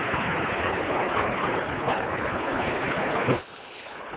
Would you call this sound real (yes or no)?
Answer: no